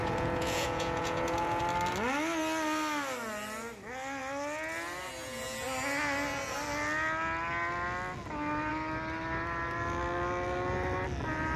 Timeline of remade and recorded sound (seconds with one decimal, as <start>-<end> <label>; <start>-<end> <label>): 0.0-1.6 remade; 1.6-11.6 recorded